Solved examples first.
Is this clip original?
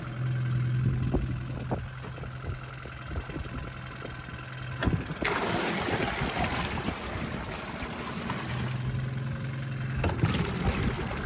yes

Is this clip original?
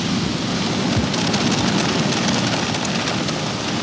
yes